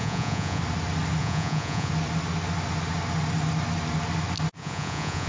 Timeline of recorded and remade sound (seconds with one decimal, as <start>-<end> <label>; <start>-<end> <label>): 0.0-0.6 remade; 0.6-1.2 recorded; 1.2-1.9 remade; 1.9-4.6 recorded; 4.6-5.3 remade